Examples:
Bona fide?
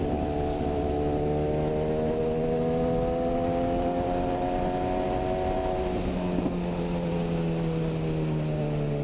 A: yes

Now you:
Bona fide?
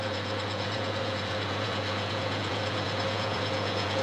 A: no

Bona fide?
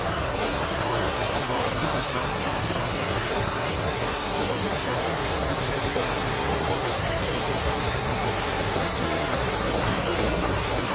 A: no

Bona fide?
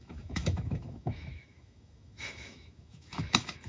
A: no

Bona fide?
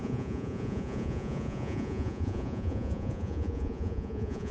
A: no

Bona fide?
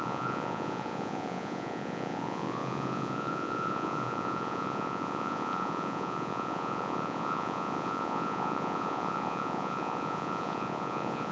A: no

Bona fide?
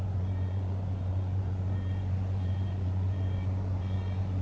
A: no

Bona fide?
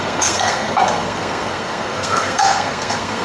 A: no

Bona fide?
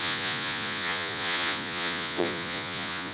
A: no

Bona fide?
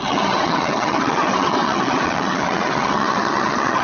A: no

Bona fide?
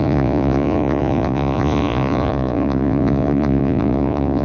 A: no